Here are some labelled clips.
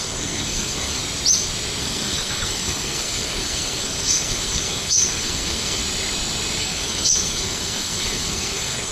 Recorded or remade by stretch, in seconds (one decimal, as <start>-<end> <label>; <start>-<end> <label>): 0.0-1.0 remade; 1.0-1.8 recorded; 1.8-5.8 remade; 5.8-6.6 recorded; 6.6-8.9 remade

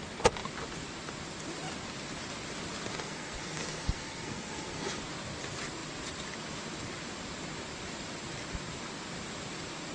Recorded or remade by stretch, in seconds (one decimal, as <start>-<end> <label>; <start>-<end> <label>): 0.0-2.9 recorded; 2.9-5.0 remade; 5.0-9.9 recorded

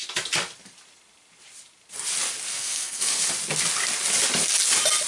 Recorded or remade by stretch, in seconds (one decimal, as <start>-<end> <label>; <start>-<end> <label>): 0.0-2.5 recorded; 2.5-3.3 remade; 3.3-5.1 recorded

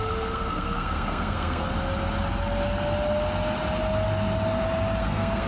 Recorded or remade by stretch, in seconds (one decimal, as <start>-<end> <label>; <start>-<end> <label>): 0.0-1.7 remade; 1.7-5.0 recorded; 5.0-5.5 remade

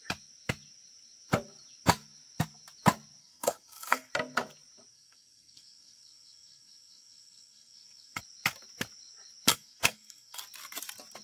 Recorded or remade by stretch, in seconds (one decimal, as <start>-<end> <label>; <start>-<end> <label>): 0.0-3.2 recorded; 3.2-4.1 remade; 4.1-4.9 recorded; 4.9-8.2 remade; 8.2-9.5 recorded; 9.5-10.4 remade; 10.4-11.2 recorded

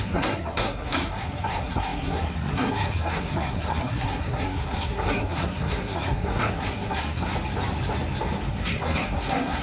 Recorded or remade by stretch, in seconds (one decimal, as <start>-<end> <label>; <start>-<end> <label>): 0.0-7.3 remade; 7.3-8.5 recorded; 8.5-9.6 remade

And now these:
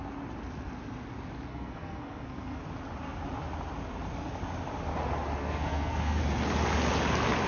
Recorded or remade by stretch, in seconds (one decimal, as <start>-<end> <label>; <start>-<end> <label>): 0.0-1.5 recorded; 1.5-2.6 remade; 2.6-5.4 recorded; 5.4-6.2 remade; 6.2-7.5 recorded

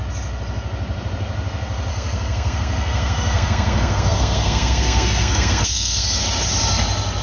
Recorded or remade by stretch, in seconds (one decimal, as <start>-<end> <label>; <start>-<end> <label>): 0.0-1.9 recorded; 1.9-6.2 remade; 6.2-7.2 recorded